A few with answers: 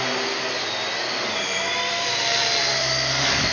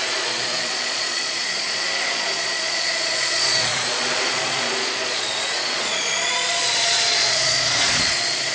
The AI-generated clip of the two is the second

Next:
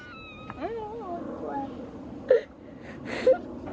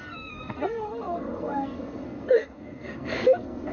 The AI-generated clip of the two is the second